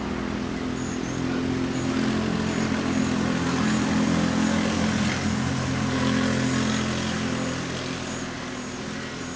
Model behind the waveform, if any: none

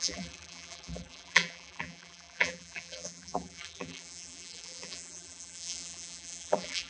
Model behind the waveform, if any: vocoder, BigVGAN v2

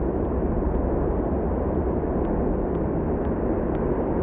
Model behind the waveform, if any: none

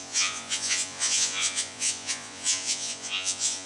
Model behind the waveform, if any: vocoder, Vocos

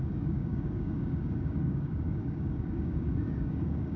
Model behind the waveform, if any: codec, DAC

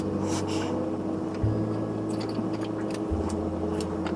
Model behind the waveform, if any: none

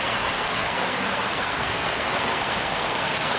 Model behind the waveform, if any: codec, SNAC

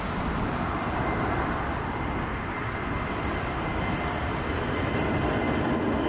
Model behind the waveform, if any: none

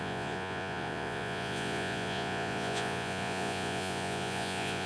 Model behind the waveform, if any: vocoder, Vocos